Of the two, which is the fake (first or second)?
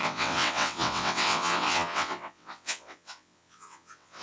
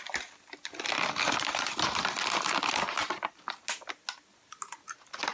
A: first